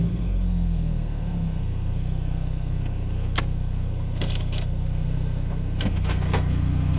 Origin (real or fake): fake